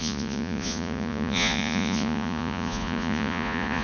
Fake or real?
fake